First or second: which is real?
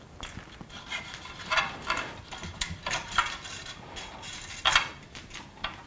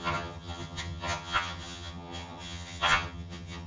first